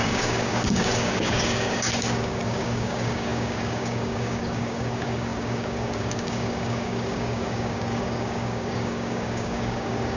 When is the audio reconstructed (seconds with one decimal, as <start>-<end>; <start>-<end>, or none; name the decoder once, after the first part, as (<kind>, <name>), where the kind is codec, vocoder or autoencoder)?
0.0-10.2 (codec, DAC)